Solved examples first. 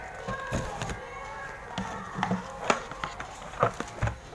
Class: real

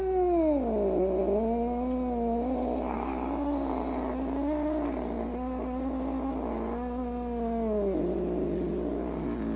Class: real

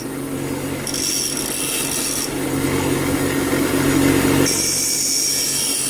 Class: real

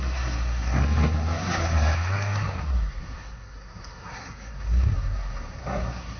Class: fake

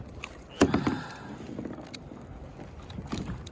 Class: real